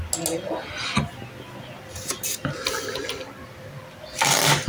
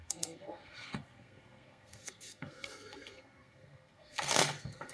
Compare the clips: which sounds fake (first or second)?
second